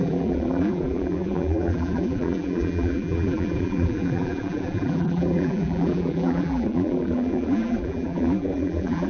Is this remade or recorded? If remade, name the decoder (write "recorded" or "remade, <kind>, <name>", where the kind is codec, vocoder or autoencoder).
remade, vocoder, BigVGAN v2